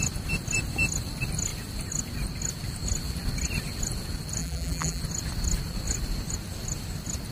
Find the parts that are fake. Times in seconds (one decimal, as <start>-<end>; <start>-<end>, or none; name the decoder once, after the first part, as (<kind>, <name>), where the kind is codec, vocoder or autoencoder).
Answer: 4.4-5.0 (vocoder, BigVGAN v2)